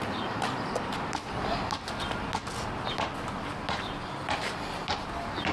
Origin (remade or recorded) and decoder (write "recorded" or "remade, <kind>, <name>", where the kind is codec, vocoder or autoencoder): recorded